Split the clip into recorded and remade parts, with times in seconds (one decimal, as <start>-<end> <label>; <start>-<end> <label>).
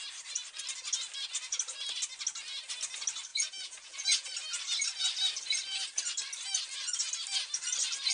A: 0.0-3.3 recorded; 3.3-4.3 remade; 4.3-8.1 recorded